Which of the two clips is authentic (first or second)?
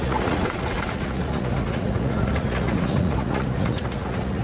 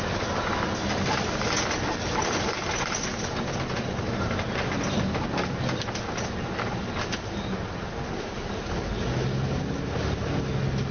second